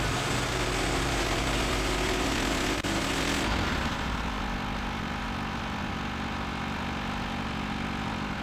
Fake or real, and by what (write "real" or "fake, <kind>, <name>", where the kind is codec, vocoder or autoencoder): real